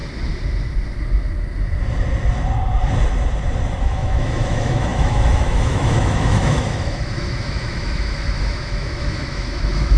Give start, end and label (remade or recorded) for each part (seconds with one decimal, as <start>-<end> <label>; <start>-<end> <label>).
0.0-3.8 recorded; 3.8-10.0 remade